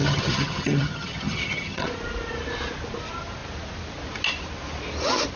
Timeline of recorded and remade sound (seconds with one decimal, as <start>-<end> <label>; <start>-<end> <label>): 0.0-1.9 remade; 1.9-5.4 recorded